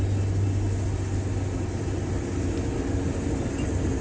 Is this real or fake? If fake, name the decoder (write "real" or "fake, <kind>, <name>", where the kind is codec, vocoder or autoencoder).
real